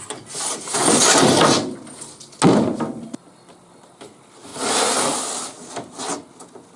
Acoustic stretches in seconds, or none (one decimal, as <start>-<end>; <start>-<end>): 0.0-6.8